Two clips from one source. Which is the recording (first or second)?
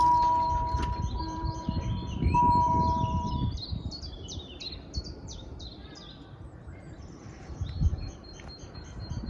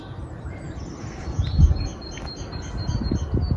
second